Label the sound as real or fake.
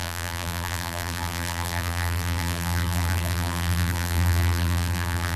fake